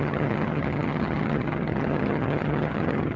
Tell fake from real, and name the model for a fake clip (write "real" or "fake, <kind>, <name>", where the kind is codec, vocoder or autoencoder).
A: fake, vocoder, HiFi-GAN